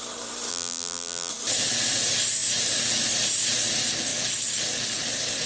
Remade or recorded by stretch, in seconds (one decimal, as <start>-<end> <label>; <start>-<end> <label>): 0.0-0.5 recorded; 0.5-1.3 remade; 1.3-5.5 recorded